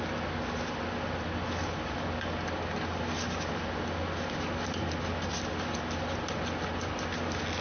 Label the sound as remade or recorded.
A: recorded